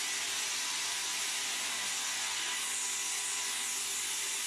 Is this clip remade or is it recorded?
recorded